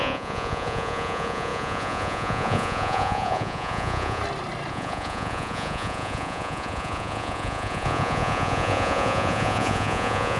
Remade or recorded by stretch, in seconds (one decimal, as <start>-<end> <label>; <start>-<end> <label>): 0.0-4.2 remade; 4.2-4.7 recorded; 4.7-10.4 remade